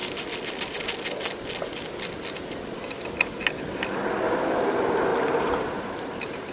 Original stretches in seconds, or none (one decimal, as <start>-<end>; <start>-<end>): 0.0-5.1